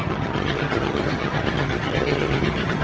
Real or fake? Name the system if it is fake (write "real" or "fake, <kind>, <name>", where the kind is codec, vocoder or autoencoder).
fake, vocoder, HiFi-GAN